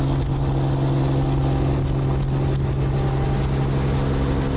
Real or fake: real